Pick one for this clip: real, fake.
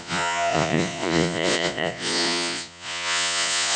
fake